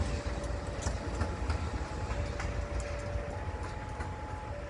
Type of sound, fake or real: real